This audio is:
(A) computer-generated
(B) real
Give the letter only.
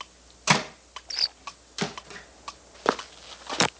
B